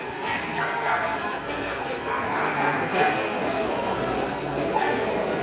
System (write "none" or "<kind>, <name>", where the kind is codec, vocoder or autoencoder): codec, SNAC